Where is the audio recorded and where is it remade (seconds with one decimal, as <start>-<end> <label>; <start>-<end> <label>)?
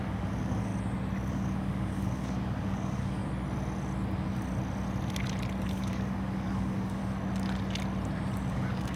0.0-0.7 remade; 0.7-1.3 recorded; 1.3-3.2 remade; 3.2-5.7 recorded; 5.7-7.0 remade; 7.0-8.5 recorded; 8.5-9.0 remade